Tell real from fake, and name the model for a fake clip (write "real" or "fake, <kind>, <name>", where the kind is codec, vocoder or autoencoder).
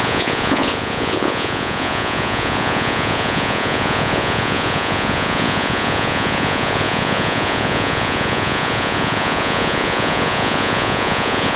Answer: fake, vocoder, Vocos